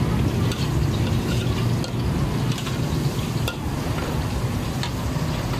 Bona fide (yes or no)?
yes